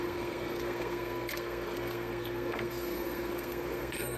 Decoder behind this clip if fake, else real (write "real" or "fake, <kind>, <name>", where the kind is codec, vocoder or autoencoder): fake, codec, SNAC